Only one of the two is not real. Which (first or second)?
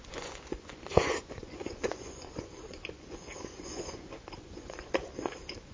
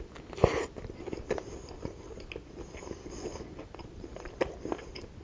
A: first